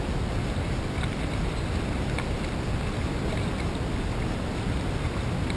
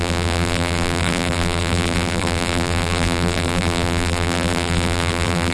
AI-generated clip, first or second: second